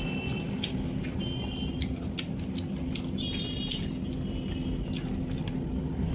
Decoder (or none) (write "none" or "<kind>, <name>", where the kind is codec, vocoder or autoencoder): none